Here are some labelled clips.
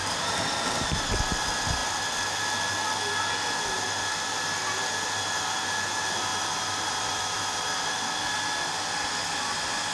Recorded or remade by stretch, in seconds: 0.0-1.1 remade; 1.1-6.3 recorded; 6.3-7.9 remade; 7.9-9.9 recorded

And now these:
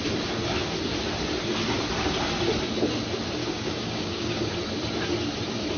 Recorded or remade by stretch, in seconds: 0.0-3.4 recorded; 3.4-4.5 remade; 4.5-5.8 recorded

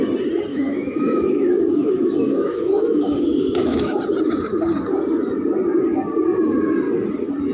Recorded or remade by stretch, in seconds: 0.0-0.5 recorded; 0.5-4.0 remade; 4.0-7.5 recorded

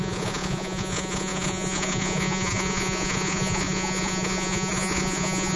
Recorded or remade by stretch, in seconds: 0.0-5.6 remade

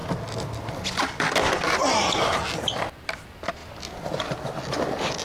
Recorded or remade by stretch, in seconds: 0.0-5.2 recorded

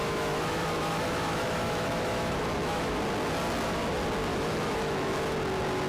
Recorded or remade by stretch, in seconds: 0.0-3.0 remade; 3.0-4.3 recorded; 4.3-5.1 remade; 5.1-5.9 recorded